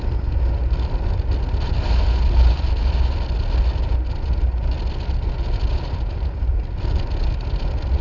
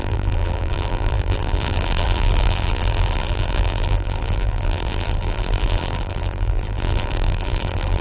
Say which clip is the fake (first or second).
second